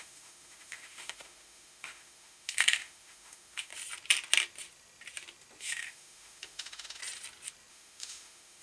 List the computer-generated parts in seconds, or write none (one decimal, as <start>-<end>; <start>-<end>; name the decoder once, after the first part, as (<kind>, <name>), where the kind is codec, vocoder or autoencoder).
0.0-3.7 (autoencoder, DAC-VAE); 5.6-7.0; 7.7-8.6